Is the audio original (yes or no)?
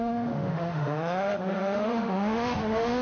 no